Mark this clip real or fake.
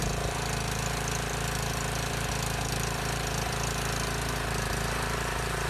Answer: fake